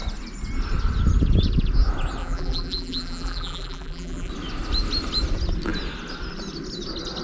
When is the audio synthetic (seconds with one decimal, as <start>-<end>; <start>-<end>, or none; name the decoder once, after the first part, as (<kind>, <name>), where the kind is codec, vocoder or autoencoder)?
2.2-4.3 (vocoder, BigVGAN v2)

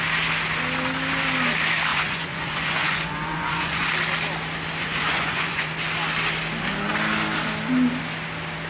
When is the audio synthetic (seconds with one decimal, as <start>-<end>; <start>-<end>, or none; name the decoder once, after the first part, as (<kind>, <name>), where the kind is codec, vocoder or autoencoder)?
1.9-3.9 (vocoder, Vocos); 4.8-5.7

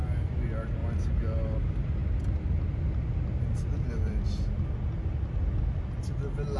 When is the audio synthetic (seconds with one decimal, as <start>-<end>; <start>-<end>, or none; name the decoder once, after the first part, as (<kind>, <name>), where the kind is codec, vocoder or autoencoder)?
none

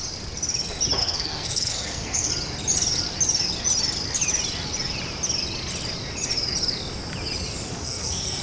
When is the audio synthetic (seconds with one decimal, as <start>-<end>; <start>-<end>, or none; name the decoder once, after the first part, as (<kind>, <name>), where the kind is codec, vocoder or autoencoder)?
1.0-2.3 (codec, SNAC); 7.7-8.4

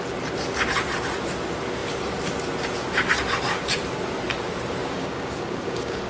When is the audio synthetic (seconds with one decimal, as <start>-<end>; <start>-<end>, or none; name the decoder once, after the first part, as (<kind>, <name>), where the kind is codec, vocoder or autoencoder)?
4.8-6.1 (codec, DAC)

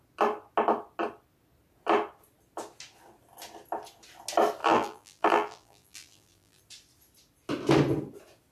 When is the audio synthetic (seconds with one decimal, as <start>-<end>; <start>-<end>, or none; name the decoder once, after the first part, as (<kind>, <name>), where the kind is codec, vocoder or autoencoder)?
4.6-6.6 (vocoder, BigVGAN v2)

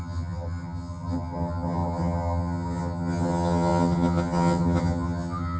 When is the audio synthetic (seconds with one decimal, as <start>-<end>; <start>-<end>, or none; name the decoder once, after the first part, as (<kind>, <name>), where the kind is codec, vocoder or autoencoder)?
0.0-5.6 (vocoder, HiFi-GAN)